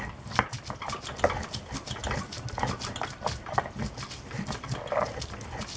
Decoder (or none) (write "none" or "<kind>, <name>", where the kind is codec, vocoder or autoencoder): none